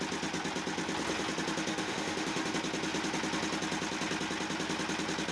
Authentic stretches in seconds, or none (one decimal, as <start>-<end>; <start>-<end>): 0.0-1.7; 2.5-5.3